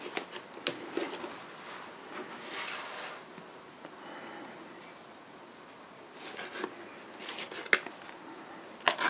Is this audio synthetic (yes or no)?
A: no